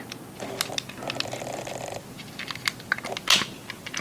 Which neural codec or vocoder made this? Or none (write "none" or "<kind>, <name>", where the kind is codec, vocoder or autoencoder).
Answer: none